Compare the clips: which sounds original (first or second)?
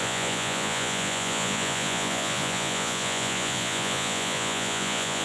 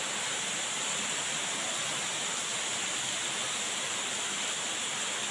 second